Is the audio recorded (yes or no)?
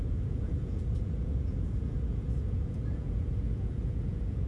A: no